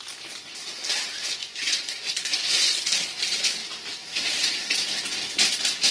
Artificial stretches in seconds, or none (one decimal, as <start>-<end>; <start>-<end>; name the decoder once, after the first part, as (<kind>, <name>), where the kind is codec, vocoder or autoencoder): 1.4-2.7 (vocoder, Vocos)